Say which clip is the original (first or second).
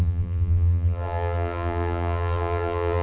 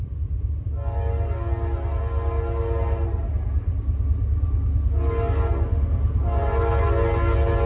second